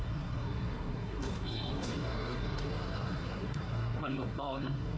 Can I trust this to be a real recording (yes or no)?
no